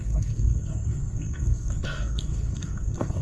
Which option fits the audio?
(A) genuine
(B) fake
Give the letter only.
B